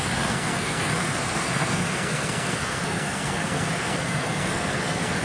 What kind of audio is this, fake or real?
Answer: fake